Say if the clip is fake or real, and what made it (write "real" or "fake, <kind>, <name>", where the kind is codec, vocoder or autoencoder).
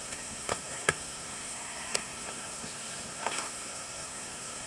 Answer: fake, codec, SNAC